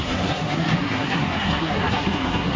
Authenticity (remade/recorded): remade